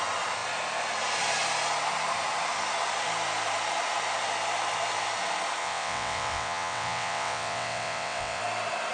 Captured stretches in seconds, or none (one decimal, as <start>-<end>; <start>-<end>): 0.0-5.6; 8.4-8.9